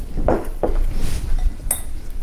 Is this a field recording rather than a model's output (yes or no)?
no